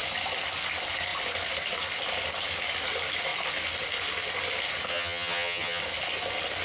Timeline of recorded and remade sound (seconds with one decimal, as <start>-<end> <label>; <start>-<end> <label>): 0.0-4.9 recorded; 4.9-5.8 remade; 5.8-6.6 recorded